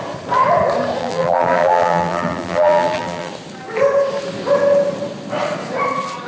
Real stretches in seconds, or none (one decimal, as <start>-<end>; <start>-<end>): 0.0-1.0; 3.3-6.3